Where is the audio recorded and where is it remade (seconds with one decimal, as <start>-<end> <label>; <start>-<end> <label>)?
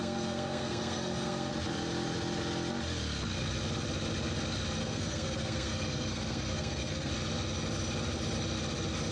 0.0-1.5 remade; 1.5-4.8 recorded; 4.8-7.1 remade; 7.1-9.1 recorded